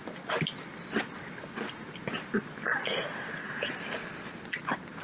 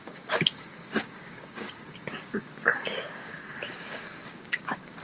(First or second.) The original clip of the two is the first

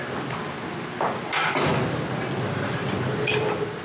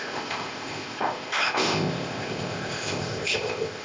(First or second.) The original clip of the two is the first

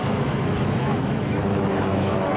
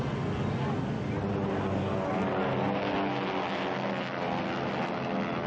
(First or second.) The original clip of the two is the second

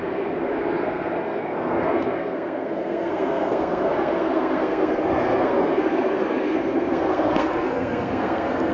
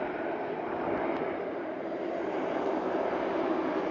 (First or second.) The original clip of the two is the second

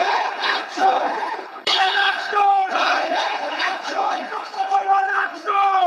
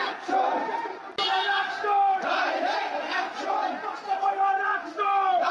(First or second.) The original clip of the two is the second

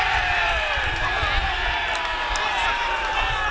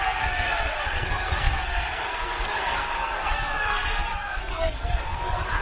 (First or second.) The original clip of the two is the first